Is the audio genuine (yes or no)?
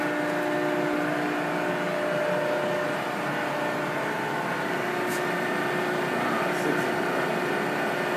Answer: yes